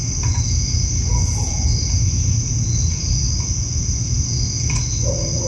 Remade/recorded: recorded